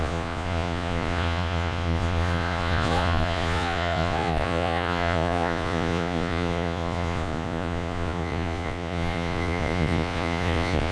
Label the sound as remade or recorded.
remade